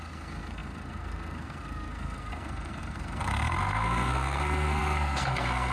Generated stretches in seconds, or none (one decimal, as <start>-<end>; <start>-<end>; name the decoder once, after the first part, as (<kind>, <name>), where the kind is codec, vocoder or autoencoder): 0.0-5.7 (codec, SNAC)